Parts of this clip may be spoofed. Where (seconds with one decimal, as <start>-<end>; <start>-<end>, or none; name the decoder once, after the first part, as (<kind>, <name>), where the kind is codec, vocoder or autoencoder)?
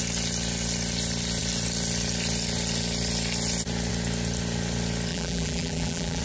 5.1-6.2 (vocoder, BigVGAN v2)